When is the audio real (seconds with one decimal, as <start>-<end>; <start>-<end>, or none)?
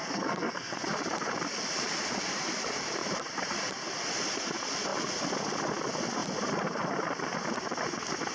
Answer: 0.8-8.3